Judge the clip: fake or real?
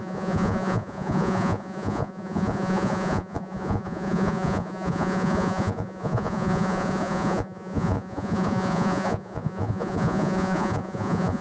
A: fake